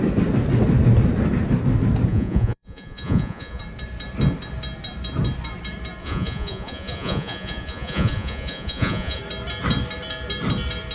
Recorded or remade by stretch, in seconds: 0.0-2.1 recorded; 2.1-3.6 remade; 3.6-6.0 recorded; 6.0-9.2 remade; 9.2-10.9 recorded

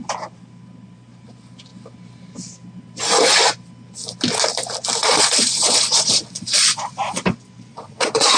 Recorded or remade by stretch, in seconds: 0.0-5.0 recorded; 5.0-7.2 remade; 7.2-7.7 recorded; 7.7-8.4 remade